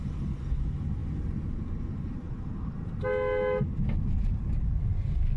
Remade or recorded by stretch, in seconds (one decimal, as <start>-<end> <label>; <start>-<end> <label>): 0.0-5.4 recorded